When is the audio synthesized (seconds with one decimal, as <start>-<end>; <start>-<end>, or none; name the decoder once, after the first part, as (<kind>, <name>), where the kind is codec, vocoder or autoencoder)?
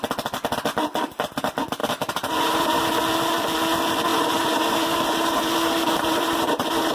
1.8-3.0 (vocoder, BigVGAN v2); 4.1-6.9